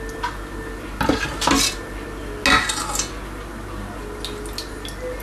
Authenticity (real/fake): real